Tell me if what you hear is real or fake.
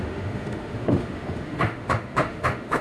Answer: fake